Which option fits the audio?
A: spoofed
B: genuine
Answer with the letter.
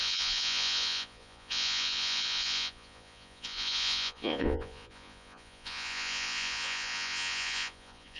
A